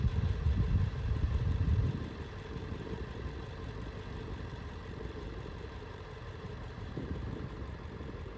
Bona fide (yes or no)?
no